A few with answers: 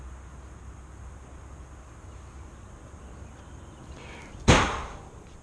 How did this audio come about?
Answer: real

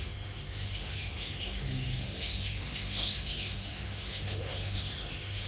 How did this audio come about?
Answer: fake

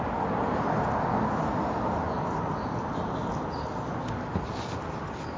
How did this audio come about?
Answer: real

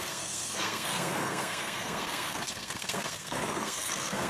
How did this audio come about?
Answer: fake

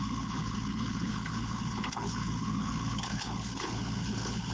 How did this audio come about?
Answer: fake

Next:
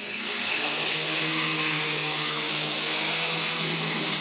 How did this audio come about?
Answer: fake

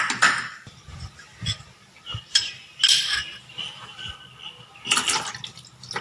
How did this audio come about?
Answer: real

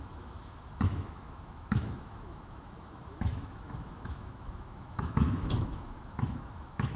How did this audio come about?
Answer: fake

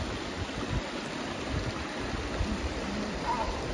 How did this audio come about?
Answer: real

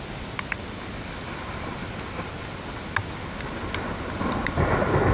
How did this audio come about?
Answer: real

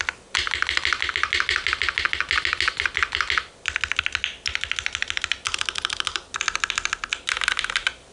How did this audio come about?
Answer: real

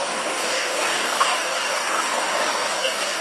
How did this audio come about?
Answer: fake